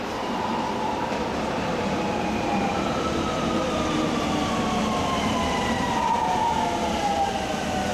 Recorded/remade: remade